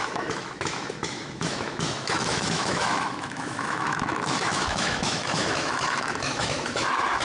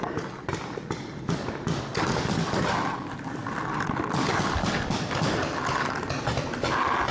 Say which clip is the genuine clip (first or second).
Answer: second